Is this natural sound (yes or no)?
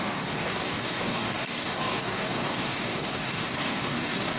no